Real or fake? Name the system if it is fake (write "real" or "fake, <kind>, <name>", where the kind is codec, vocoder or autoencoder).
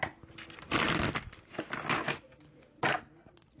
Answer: real